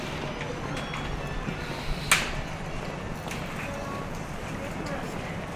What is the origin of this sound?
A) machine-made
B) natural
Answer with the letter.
B